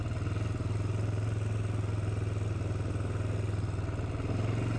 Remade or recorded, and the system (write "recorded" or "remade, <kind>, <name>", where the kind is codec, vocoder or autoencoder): recorded